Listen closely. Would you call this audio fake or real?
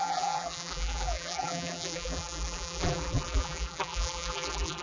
fake